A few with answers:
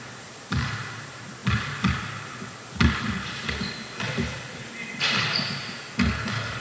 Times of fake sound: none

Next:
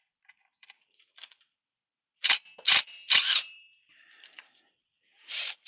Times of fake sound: 0.0-1.8 (vocoder, BigVGAN v2); 2.8-5.7

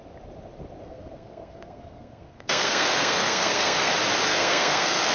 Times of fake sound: 0.8-3.9 (codec, SNAC); 4.3-5.1

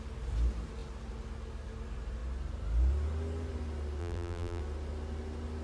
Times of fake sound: 4.0-4.6 (vocoder, BigVGAN v2)

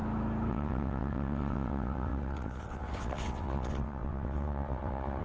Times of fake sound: 0.5-5.2 (vocoder, WaveNeXt)

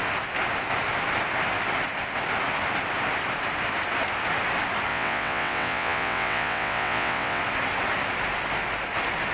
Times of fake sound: 4.9-7.4 (vocoder, WaveNeXt)

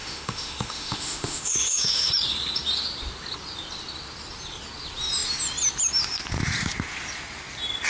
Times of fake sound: 0.0-2.1 (autoencoder, DAC-VAE)